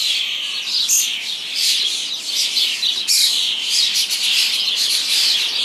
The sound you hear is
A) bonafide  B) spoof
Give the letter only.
A